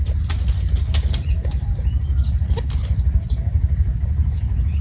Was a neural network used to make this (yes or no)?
no